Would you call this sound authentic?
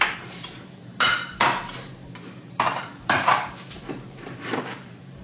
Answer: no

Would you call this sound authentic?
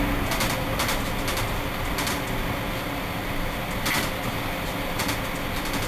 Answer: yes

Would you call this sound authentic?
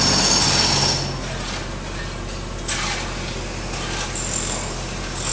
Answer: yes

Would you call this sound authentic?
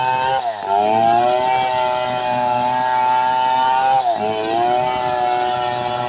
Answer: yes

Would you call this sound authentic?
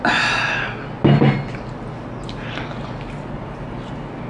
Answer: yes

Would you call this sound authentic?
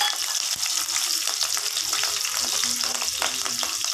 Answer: yes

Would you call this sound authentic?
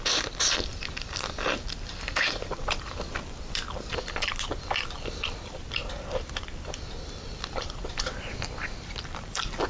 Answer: no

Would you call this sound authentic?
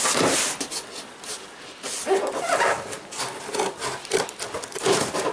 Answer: yes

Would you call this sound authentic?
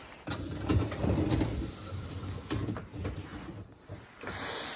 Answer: yes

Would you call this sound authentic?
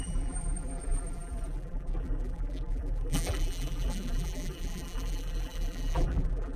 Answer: no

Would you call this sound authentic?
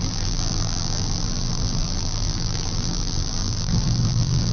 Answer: no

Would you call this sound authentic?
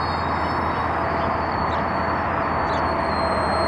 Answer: yes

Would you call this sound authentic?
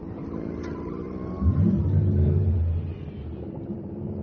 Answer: no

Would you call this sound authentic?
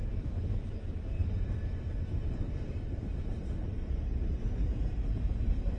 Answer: no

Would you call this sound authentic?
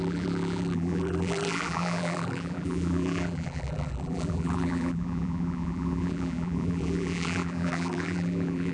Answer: no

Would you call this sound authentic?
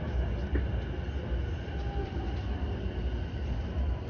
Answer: yes